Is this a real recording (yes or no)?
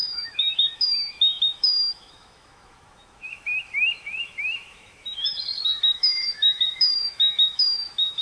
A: no